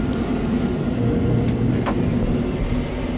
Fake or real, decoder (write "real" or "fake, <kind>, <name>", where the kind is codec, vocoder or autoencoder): real